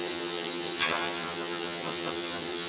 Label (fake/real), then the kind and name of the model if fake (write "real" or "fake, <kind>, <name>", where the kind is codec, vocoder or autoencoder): fake, vocoder, HiFi-GAN